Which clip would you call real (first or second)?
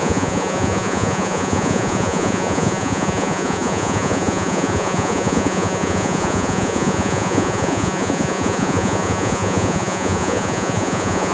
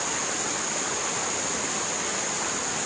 second